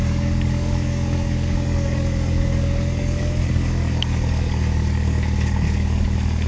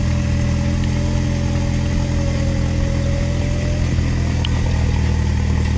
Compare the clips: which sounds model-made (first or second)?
first